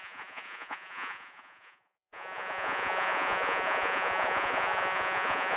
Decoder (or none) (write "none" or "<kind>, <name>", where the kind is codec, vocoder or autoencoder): vocoder, Vocos